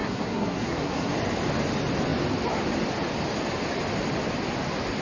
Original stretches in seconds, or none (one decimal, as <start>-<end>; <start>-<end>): 1.1-5.0